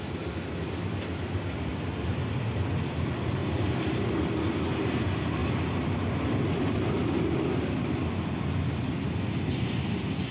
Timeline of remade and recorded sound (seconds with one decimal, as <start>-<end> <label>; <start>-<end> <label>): 0.0-10.3 recorded